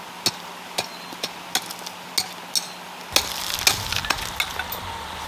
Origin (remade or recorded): recorded